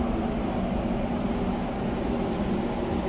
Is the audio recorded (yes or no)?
yes